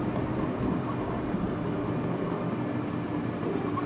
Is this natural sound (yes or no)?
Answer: yes